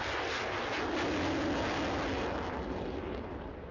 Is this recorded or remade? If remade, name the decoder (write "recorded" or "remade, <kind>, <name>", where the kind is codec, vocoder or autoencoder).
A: recorded